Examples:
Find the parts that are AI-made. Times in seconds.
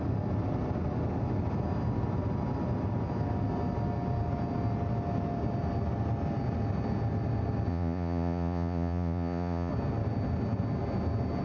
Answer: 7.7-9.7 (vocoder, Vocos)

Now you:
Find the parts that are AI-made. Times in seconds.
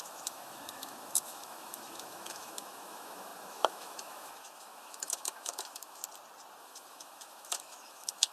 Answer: 0.0-6.0 (autoencoder, DAC-VAE); 6.6-8.3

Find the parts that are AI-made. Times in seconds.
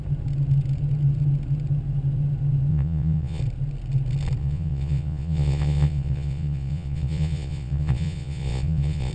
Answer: 2.7-3.4 (vocoder, Vocos); 4.4-9.1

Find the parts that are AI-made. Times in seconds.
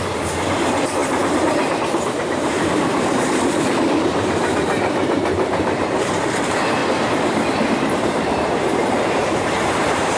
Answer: 0.0-6.8 (vocoder, BigVGAN v2); 7.9-10.2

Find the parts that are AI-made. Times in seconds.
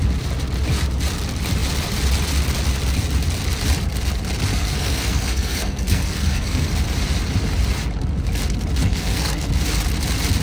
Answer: 4.5-6.7 (codec, SNAC); 8.8-9.5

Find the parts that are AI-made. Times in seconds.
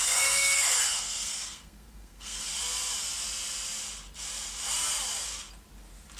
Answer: 0.0-2.5 (codec, SNAC)